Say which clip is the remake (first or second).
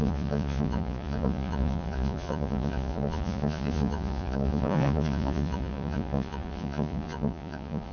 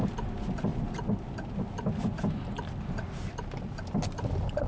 first